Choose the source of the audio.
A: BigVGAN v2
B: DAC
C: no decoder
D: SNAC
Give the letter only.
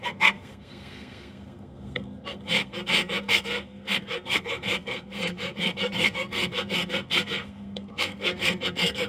D